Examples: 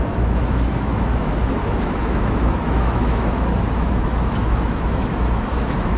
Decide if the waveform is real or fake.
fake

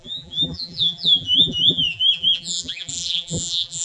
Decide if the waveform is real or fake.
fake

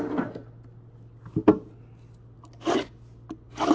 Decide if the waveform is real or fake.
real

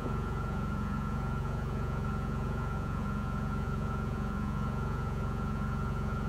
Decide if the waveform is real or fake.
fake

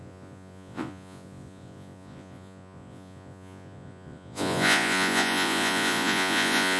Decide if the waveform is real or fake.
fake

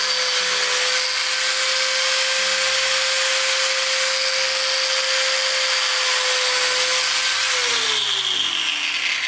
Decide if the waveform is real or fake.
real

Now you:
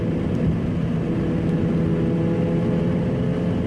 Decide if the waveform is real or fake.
real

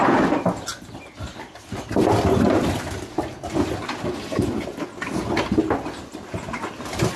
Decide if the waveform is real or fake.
real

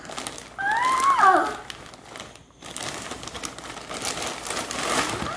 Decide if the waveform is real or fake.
real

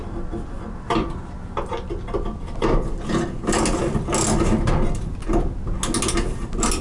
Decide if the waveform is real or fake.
real